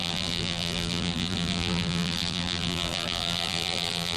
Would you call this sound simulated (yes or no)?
yes